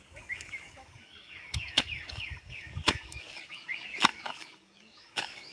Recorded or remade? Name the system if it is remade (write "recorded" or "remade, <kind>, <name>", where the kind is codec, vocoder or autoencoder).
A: remade, codec, DAC